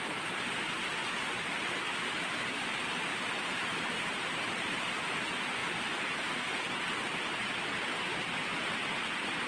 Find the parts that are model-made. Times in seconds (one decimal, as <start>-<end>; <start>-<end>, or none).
3.1-4.5